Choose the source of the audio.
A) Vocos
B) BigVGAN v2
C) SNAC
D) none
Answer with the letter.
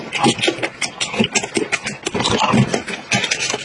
D